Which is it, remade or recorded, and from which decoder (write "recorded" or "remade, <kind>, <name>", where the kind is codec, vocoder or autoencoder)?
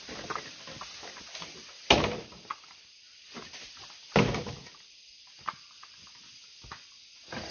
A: recorded